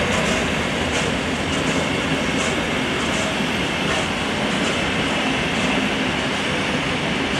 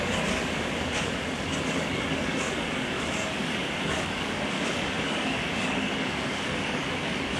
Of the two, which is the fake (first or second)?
second